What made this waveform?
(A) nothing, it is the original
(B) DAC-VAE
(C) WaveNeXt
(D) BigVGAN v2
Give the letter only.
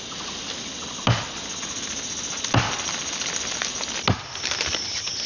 A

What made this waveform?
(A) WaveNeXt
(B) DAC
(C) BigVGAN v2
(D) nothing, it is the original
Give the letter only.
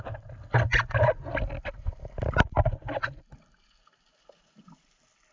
D